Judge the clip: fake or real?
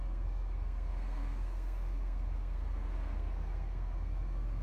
fake